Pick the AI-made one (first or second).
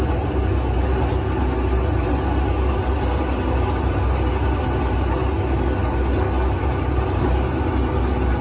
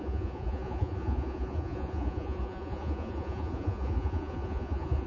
second